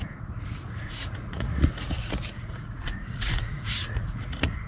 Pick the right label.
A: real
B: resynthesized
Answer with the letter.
B